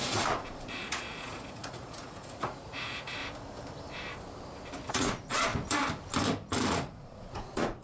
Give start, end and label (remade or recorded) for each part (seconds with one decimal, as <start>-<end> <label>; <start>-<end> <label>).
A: 0.0-3.2 remade; 3.2-4.9 recorded; 4.9-5.5 remade; 5.5-6.7 recorded; 6.7-7.8 remade